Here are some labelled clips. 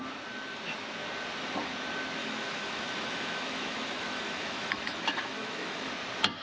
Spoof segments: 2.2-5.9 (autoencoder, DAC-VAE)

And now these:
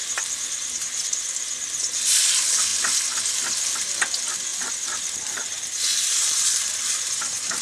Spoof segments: 0.0-2.0 (vocoder, BigVGAN v2); 4.5-7.6

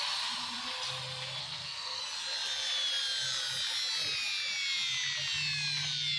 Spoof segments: 1.4-2.0 (codec, SNAC)

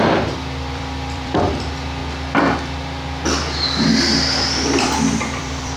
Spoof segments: 0.0-2.0 (vocoder, BigVGAN v2); 4.4-5.8